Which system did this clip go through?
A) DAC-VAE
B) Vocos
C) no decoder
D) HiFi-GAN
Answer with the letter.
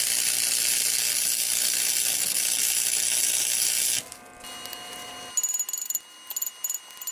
C